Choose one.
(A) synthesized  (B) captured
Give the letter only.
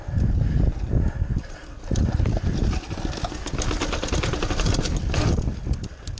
B